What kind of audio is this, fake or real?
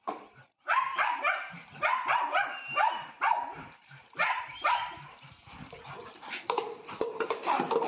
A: fake